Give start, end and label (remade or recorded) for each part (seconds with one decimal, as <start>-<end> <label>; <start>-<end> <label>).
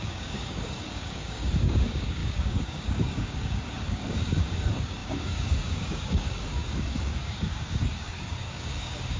0.0-9.2 remade